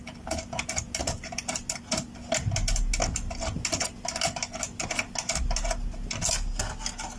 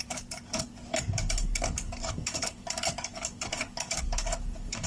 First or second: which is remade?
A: second